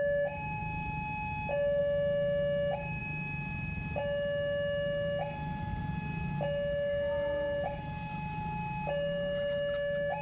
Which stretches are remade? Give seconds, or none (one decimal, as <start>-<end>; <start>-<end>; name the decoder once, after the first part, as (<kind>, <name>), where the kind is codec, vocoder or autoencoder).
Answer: none